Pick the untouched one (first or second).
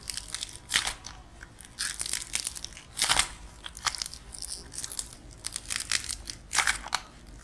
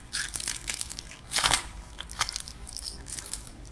first